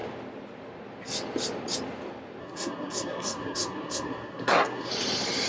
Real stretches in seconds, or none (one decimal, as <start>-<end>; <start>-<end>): 0.0-2.4; 4.9-5.5